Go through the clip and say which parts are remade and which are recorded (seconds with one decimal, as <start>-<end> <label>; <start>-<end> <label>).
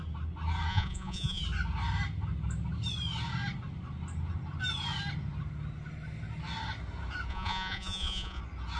0.0-0.7 recorded; 0.7-1.4 remade; 1.4-7.3 recorded; 7.3-8.4 remade; 8.4-8.8 recorded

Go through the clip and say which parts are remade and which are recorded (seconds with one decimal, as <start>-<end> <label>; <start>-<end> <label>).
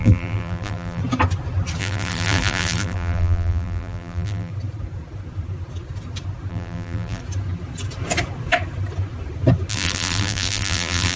0.0-1.0 remade; 1.0-1.8 recorded; 1.8-4.5 remade; 4.5-6.5 recorded; 6.5-7.2 remade; 7.2-9.7 recorded; 9.7-11.2 remade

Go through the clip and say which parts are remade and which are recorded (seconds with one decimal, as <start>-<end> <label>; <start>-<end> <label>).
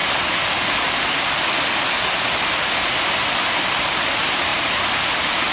0.0-5.5 recorded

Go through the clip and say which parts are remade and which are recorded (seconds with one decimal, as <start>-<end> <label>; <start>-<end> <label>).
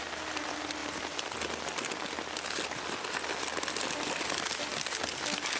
0.0-5.6 recorded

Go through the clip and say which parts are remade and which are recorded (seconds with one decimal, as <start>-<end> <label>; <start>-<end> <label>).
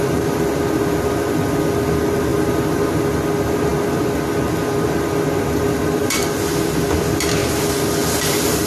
0.0-8.7 recorded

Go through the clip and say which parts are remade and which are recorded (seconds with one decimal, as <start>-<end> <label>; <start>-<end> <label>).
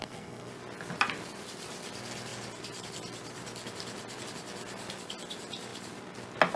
0.0-0.5 remade; 0.5-6.6 recorded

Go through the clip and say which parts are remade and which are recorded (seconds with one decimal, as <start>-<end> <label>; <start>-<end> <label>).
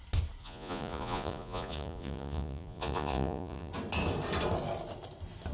0.0-0.4 recorded; 0.4-3.7 remade; 3.7-5.5 recorded